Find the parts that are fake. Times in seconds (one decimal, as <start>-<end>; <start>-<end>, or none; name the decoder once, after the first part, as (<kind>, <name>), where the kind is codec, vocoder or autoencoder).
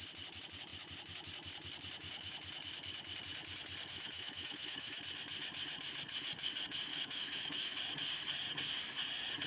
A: 3.9-5.0 (autoencoder, DAC-VAE); 6.9-7.8